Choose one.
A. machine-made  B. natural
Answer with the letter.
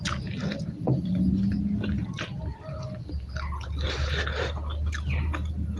B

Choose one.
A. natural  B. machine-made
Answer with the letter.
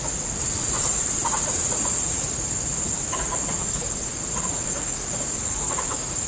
B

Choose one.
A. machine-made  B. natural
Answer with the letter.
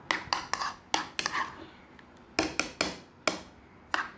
B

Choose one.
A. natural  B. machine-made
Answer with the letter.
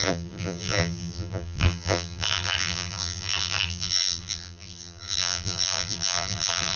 B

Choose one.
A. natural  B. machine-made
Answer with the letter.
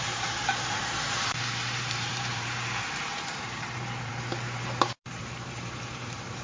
B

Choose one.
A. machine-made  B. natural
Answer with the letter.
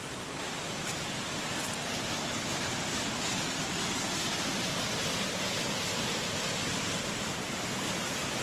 A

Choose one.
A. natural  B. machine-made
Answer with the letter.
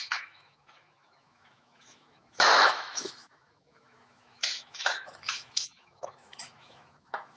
B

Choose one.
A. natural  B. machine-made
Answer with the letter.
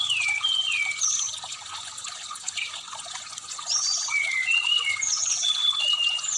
B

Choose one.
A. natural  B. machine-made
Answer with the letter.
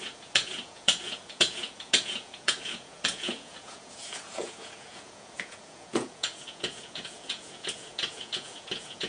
B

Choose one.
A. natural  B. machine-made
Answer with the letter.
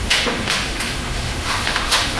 B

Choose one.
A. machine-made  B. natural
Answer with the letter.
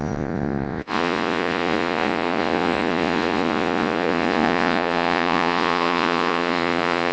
A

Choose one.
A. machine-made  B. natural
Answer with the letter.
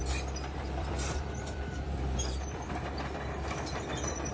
A